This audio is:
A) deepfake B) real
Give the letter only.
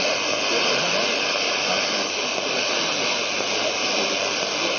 B